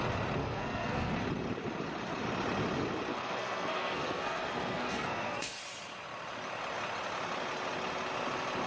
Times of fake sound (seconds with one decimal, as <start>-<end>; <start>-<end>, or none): 0.4-1.1; 3.1-5.6